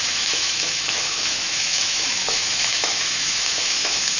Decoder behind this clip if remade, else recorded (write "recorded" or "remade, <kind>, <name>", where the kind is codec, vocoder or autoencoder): remade, autoencoder, DAC-VAE